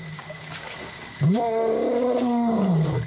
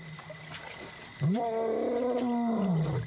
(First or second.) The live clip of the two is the second